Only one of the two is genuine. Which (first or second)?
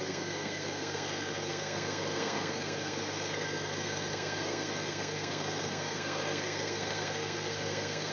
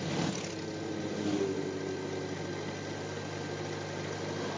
second